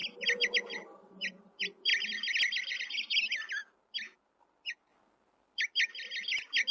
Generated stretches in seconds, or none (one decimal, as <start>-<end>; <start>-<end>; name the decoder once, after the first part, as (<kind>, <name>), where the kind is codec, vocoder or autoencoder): none